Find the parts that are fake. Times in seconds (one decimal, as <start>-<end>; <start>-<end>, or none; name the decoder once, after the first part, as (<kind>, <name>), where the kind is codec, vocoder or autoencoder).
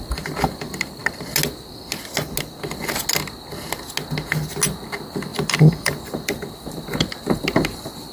0.0-1.0 (vocoder, BigVGAN v2); 4.8-8.1